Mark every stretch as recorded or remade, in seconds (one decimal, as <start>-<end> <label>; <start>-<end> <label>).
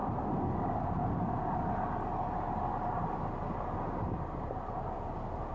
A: 0.0-5.5 recorded